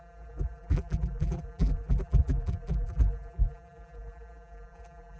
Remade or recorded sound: remade